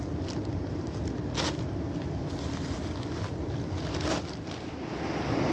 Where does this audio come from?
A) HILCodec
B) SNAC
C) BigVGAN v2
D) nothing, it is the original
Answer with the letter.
D